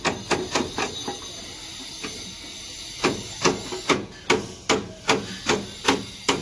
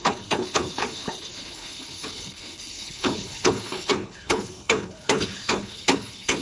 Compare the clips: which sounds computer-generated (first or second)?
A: second